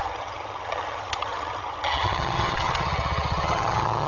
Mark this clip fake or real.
fake